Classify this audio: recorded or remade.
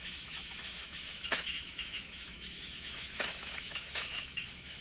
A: remade